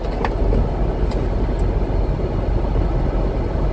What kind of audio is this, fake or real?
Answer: real